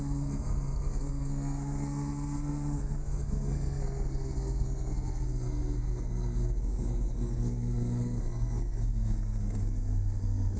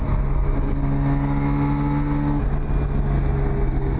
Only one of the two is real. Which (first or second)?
second